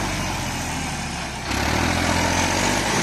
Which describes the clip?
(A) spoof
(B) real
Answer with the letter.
B